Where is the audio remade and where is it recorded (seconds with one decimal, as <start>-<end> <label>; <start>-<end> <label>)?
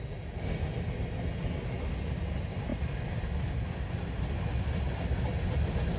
0.0-6.0 recorded